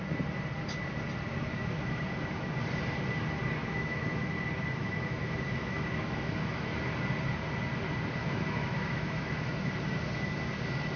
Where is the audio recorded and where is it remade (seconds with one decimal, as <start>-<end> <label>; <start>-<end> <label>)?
0.0-1.5 recorded; 1.5-2.5 remade; 2.5-3.6 recorded; 3.6-4.3 remade; 4.3-4.8 recorded; 4.8-6.8 remade; 6.8-8.2 recorded; 8.2-9.7 remade; 9.7-11.0 recorded

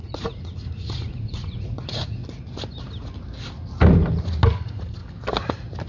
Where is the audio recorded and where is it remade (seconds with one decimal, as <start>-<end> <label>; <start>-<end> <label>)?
0.0-2.2 remade; 2.2-4.6 recorded; 4.6-5.0 remade; 5.0-5.9 recorded

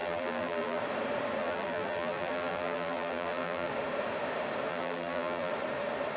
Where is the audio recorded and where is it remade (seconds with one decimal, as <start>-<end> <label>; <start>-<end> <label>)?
0.0-0.8 remade; 0.8-1.4 recorded; 1.4-3.7 remade; 3.7-4.7 recorded; 4.7-5.5 remade; 5.5-6.2 recorded

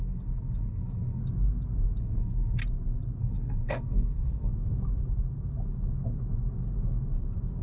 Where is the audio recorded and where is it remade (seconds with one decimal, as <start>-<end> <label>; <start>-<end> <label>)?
0.0-1.2 remade; 1.2-2.0 recorded; 2.0-2.6 remade; 2.6-3.2 recorded; 3.2-4.5 remade; 4.5-7.6 recorded